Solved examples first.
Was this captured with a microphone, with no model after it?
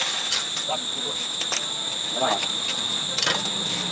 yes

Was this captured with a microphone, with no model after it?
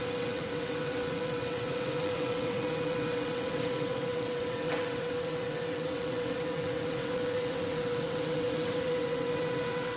no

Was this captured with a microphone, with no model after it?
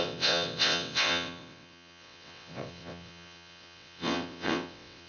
no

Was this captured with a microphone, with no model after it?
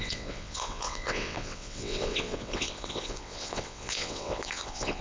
no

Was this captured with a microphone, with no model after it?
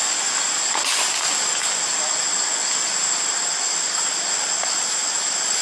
yes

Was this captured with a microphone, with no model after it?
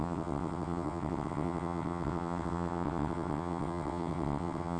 no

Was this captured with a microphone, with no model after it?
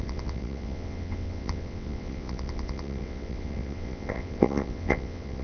no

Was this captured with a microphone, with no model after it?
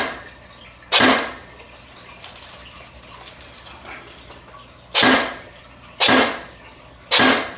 yes